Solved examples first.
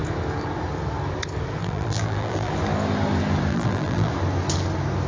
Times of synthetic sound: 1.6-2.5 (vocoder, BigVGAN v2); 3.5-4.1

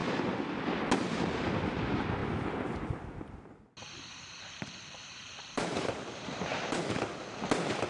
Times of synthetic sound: 5.0-6.8 (vocoder, BigVGAN v2)

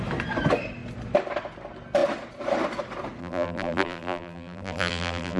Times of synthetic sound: 3.2-5.4 (vocoder, BigVGAN v2)

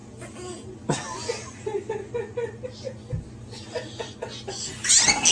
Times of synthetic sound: none